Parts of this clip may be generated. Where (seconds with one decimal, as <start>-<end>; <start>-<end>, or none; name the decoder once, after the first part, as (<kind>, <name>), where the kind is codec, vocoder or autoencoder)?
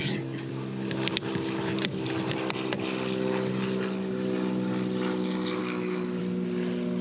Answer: 0.0-0.5 (codec, DAC); 5.6-6.2